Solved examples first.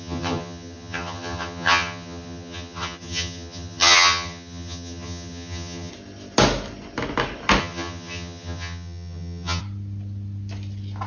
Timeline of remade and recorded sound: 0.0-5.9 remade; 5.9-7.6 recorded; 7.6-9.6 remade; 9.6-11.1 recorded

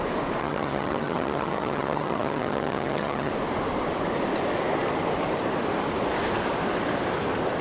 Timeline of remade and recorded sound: 0.0-0.4 recorded; 0.4-3.3 remade; 3.3-7.6 recorded

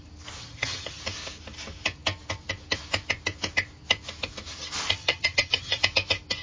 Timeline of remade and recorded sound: 0.0-0.4 recorded; 0.4-1.0 remade; 1.0-5.0 recorded; 5.0-5.8 remade; 5.8-6.4 recorded

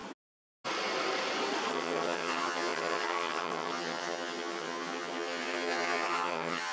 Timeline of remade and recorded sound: 0.0-1.7 recorded; 1.7-6.7 remade

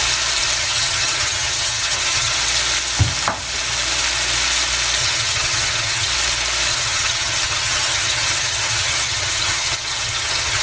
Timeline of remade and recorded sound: 0.0-0.6 recorded; 0.6-2.4 remade; 2.4-5.0 recorded; 5.0-6.1 remade; 6.1-6.7 recorded; 6.7-10.6 remade

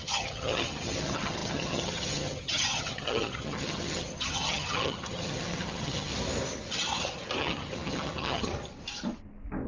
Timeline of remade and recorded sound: 0.0-6.1 remade; 6.1-7.4 recorded; 7.4-8.5 remade; 8.5-9.7 recorded

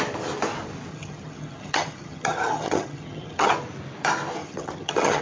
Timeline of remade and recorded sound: 0.0-0.9 recorded; 0.9-3.5 remade; 3.5-4.4 recorded; 4.4-5.2 remade

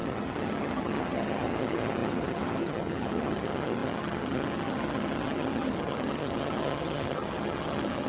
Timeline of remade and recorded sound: 0.0-8.1 remade